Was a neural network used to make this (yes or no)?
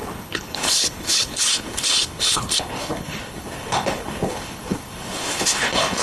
yes